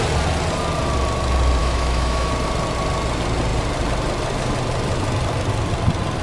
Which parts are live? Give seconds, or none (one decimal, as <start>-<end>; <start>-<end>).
0.0-1.6; 2.3-6.2